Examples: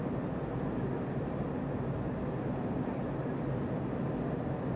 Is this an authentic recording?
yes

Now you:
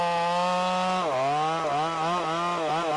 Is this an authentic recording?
yes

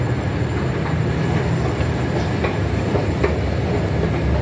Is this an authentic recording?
yes